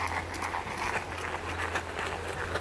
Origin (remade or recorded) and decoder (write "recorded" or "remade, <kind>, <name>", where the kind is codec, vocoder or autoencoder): recorded